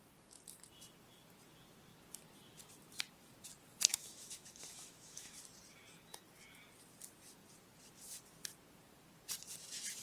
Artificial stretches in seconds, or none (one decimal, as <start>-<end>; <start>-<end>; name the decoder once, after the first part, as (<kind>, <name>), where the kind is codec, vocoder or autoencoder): 3.9-5.4 (autoencoder, DAC-VAE)